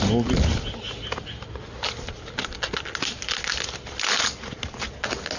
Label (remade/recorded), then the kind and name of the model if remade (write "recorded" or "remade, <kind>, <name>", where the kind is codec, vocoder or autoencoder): recorded